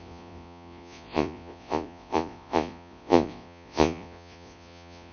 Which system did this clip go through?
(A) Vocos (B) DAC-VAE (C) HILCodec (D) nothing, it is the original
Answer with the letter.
A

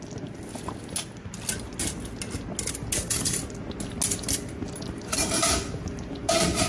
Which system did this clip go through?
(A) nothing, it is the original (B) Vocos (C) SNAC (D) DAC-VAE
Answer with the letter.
A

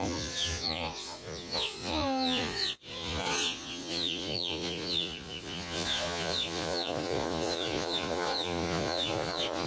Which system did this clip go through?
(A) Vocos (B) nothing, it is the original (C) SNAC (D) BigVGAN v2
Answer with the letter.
A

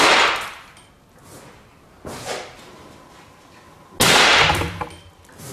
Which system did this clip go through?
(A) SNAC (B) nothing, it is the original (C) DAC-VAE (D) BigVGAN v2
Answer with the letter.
B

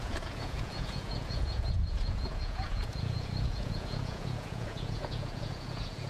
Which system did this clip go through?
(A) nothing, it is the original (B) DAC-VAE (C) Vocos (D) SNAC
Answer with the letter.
C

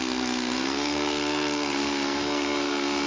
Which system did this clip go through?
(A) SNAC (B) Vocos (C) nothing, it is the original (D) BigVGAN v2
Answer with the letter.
A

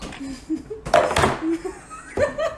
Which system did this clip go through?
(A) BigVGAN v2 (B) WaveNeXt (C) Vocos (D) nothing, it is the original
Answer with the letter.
D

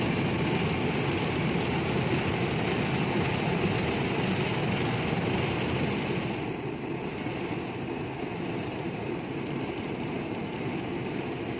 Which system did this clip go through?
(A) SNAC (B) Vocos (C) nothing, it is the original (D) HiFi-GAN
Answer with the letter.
C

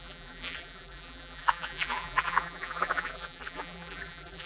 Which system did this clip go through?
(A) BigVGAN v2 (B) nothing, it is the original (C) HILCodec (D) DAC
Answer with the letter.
A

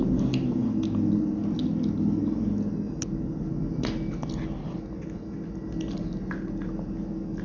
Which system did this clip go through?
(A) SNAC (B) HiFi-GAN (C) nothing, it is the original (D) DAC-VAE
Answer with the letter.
C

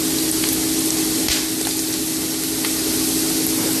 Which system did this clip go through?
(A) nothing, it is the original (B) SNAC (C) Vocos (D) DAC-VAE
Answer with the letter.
A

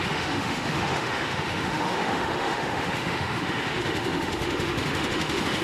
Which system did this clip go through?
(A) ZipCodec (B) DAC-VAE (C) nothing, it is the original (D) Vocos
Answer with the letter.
B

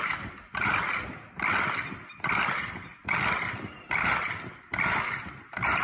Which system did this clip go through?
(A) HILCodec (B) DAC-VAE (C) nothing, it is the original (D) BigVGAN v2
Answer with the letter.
C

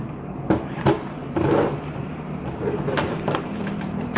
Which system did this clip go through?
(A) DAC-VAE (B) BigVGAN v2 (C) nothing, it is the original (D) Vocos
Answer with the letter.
B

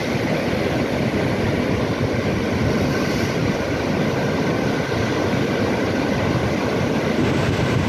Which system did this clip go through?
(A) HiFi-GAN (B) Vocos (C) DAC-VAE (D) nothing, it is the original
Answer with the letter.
D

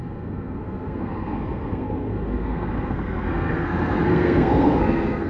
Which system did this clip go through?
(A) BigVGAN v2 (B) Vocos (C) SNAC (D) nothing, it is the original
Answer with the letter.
C